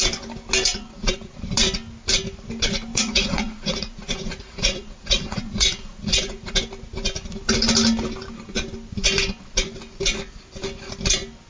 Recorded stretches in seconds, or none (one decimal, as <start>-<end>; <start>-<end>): 0.0-0.7; 1.4-2.9; 6.5-11.5